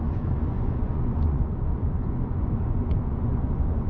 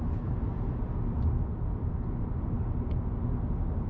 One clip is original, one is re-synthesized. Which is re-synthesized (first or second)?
first